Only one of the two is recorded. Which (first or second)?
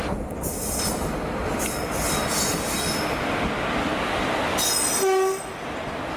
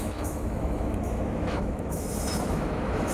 first